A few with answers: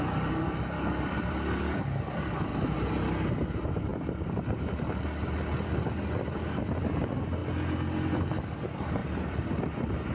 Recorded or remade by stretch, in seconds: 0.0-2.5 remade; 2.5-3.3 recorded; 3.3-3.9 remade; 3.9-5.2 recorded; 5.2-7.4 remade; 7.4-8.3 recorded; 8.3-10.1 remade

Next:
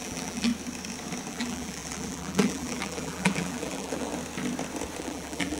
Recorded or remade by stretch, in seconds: 0.0-0.5 remade; 0.5-1.3 recorded; 1.3-4.1 remade; 4.1-5.0 recorded; 5.0-5.6 remade

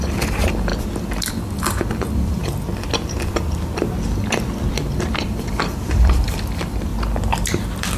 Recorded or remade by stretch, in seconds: 0.0-0.7 remade; 0.7-1.3 recorded; 1.3-2.4 remade; 2.4-4.7 recorded; 4.7-6.9 remade; 6.9-8.0 recorded

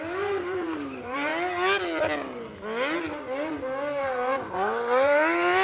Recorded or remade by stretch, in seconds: 0.0-1.3 remade; 1.3-4.0 recorded; 4.0-5.6 remade

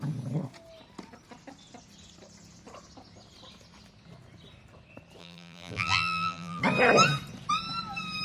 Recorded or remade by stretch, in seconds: 0.0-5.2 recorded; 5.2-6.6 remade; 6.6-8.2 recorded

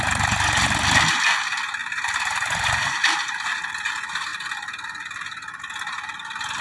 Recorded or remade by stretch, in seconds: 0.0-1.8 recorded; 1.8-3.7 remade; 3.7-6.6 recorded